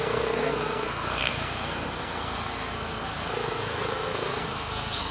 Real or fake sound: fake